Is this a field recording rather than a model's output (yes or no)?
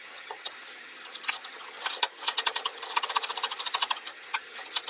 no